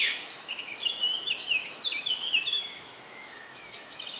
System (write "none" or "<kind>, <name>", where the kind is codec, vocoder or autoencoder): autoencoder, DAC-VAE